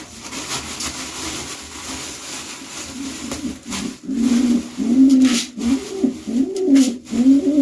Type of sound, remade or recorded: recorded